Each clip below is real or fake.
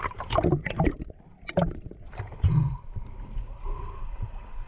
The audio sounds real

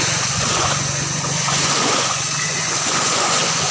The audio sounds fake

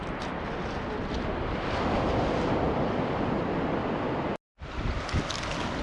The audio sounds real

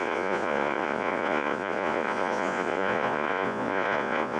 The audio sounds fake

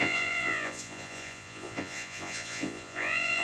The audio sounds fake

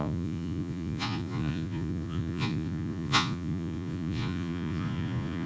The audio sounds fake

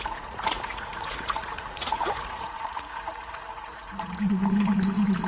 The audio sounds fake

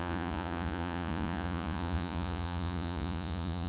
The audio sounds fake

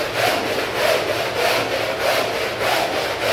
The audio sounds real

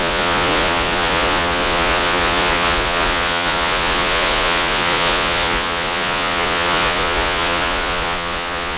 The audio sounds fake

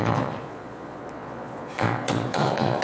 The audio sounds fake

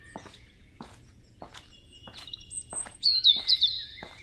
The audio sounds fake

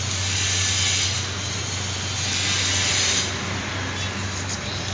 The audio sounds real